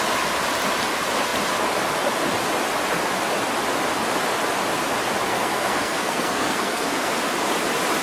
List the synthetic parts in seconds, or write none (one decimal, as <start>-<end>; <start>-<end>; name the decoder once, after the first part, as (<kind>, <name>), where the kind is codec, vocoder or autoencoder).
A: 5.3-7.1 (codec, SNAC)